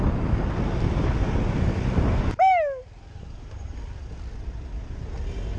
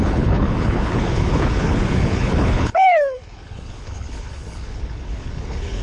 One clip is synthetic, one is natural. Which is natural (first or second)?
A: first